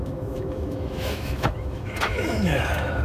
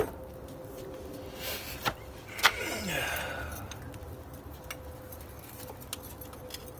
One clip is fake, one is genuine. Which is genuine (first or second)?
second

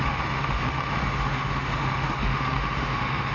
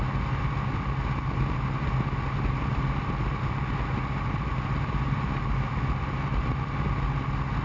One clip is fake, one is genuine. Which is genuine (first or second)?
second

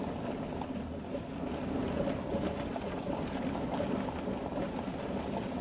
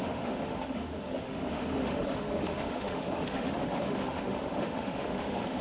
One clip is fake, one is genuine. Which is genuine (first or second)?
first